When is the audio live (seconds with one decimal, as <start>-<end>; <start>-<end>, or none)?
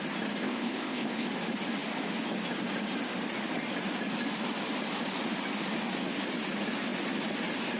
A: 0.0-0.4; 1.3-7.8